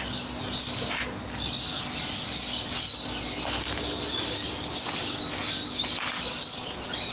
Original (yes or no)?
yes